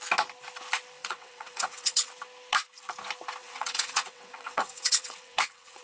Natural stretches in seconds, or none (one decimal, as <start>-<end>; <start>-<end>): 0.0-1.0; 2.1-3.4

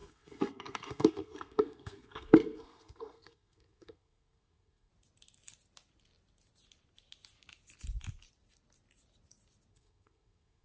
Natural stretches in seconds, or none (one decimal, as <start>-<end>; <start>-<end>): 4.9-9.7

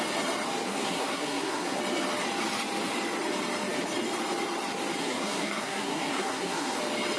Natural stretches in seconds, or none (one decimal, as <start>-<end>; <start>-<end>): 0.0-0.7; 1.8-5.0; 6.8-7.2

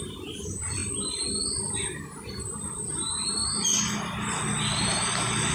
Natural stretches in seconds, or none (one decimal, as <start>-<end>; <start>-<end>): 0.8-1.6; 3.4-4.7